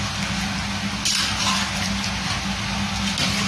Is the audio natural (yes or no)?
yes